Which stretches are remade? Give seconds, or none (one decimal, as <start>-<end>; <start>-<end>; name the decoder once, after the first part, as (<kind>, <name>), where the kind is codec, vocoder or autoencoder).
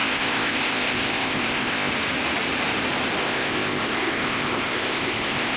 0.0-1.9 (codec, ZipCodec); 3.2-5.6